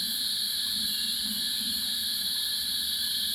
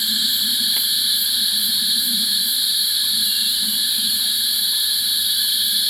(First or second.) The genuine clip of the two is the first